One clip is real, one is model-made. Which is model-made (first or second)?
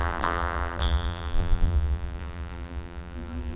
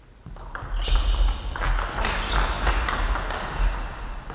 first